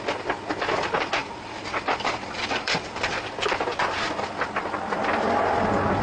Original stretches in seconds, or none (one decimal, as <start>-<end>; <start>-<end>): 0.0-1.2; 3.0-6.0

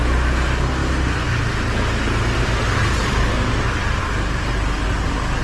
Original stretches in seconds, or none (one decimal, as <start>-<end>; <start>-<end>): 0.0-5.4

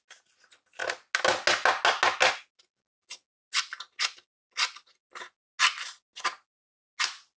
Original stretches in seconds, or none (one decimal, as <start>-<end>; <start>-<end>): 0.0-7.4

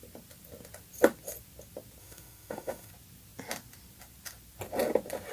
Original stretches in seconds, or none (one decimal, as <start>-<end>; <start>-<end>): 0.0-2.0; 2.9-5.3

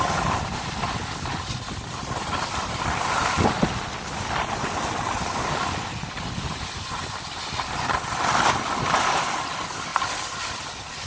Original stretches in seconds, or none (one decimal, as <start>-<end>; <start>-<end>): 0.0-11.1

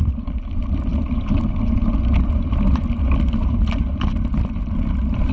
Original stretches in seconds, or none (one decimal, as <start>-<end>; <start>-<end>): 0.0-5.3

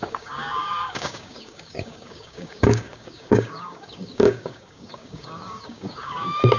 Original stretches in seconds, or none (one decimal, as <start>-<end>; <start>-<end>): none